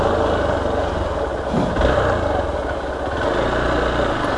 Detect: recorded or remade recorded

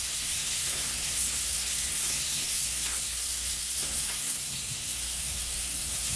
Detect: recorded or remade remade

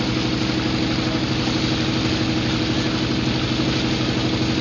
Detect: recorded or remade recorded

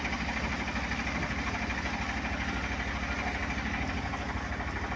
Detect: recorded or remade recorded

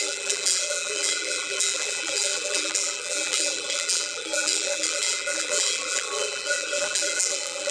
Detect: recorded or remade remade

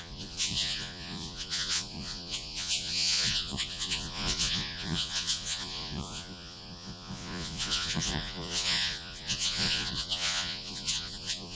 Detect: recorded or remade remade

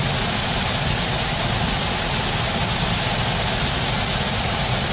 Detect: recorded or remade recorded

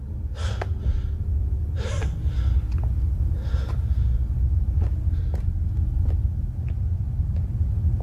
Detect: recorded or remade recorded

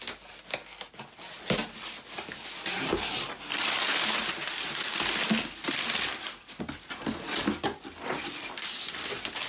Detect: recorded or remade recorded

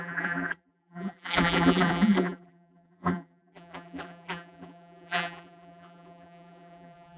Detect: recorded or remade remade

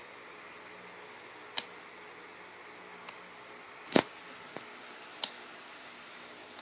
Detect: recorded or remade recorded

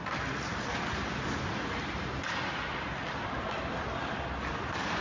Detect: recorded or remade recorded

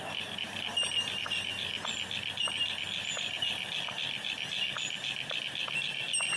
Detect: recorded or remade recorded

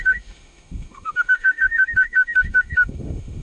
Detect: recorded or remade remade